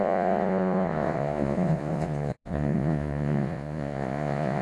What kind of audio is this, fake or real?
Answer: fake